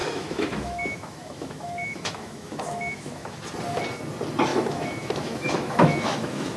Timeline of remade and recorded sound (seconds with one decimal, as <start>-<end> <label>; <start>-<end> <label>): 0.0-3.4 remade; 3.4-4.5 recorded; 4.5-6.6 remade